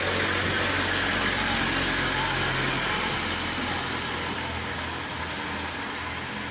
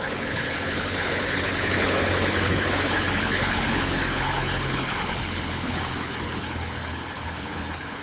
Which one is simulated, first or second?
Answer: second